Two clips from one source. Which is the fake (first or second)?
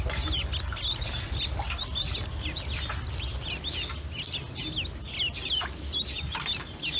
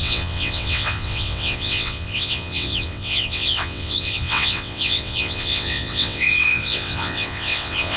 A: second